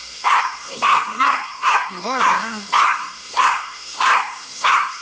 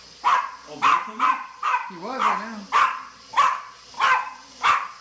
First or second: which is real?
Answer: second